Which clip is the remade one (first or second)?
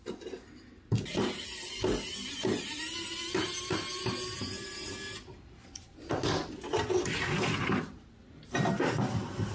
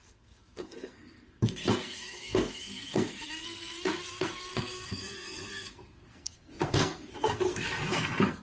second